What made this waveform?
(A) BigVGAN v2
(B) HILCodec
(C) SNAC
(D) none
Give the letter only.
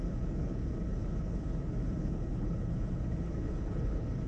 B